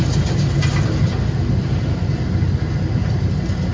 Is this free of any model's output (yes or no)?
yes